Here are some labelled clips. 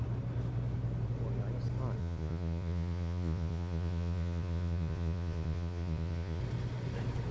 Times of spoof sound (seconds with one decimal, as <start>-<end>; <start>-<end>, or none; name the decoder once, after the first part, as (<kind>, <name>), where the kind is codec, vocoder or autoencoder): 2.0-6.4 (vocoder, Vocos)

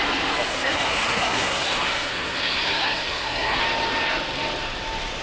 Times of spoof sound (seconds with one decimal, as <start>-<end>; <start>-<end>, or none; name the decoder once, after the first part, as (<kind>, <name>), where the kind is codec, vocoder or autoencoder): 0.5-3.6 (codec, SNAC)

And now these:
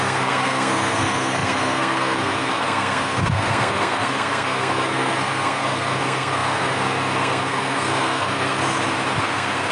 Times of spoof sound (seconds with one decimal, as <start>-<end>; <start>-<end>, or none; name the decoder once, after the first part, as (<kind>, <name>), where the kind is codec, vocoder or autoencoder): 0.0-8.6 (codec, SNAC); 9.2-9.7

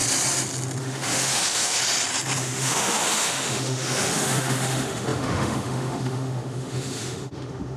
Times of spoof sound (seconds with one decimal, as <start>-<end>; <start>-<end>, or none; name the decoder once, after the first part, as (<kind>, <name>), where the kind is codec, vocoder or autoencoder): 0.8-1.8 (autoencoder, DAC-VAE); 2.4-7.8

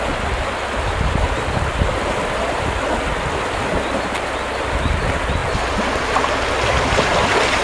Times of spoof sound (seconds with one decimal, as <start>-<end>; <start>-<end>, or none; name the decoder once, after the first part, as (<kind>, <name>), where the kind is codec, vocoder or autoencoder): none